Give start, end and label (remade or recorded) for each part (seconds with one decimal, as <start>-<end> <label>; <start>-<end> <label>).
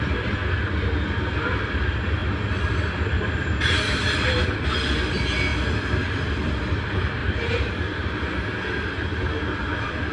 0.0-7.2 recorded; 7.2-8.5 remade; 8.5-10.1 recorded